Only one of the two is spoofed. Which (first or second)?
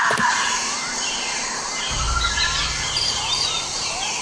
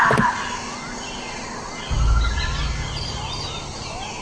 first